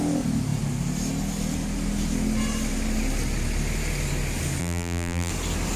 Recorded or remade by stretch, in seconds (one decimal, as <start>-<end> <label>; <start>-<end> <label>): 0.0-4.6 recorded; 4.6-5.3 remade; 5.3-5.8 recorded